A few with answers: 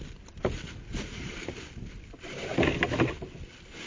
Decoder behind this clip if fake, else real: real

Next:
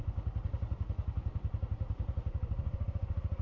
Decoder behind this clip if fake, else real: real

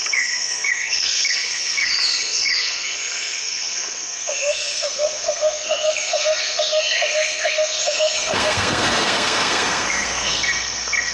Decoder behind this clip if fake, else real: fake, codec, SNAC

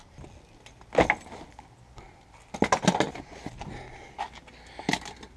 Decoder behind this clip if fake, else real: real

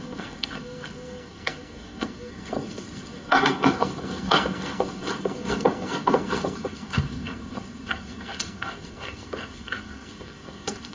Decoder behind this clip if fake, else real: fake, codec, SNAC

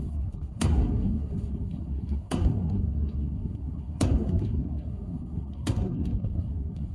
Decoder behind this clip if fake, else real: fake, codec, SNAC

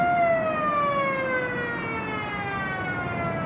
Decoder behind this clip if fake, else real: real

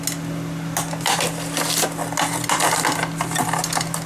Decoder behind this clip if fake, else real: real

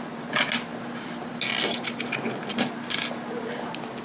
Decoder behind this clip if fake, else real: real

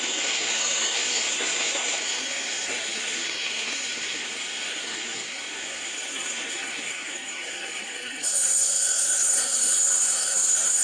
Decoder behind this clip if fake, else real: fake, codec, SNAC